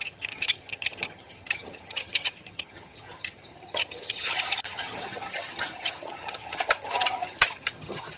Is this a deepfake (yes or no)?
yes